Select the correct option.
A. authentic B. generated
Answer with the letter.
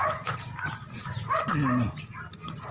A